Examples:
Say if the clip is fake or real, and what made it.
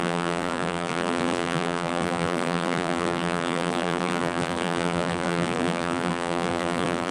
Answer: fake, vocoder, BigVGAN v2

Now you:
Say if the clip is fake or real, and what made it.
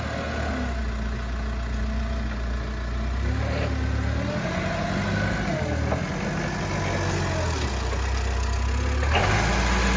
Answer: real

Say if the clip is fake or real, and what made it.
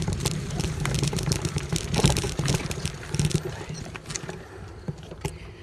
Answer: fake, vocoder, BigVGAN v2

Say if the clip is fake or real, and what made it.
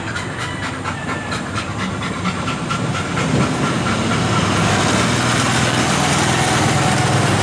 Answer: real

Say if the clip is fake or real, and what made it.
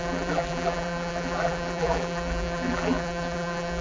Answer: fake, vocoder, BigVGAN v2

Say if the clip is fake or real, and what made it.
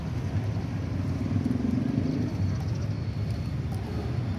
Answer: fake, vocoder, BigVGAN v2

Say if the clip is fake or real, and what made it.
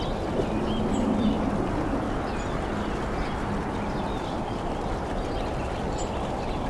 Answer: real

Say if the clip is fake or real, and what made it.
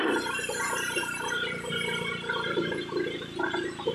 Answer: fake, vocoder, BigVGAN v2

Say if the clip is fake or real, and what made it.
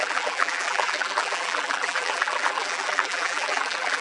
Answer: fake, vocoder, BigVGAN v2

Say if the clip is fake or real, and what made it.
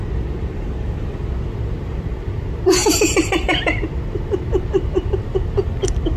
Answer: fake, vocoder, BigVGAN v2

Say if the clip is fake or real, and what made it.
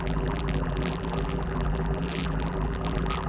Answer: fake, vocoder, BigVGAN v2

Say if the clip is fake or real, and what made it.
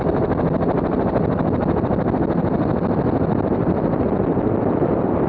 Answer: real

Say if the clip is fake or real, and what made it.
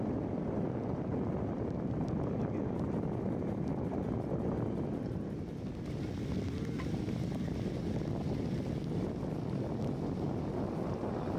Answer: real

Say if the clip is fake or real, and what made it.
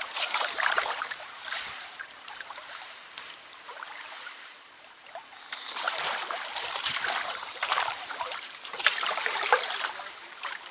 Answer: fake, vocoder, BigVGAN v2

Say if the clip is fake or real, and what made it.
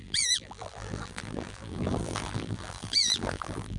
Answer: fake, vocoder, BigVGAN v2